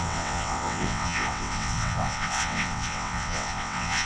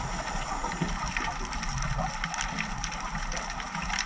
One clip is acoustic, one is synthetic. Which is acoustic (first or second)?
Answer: second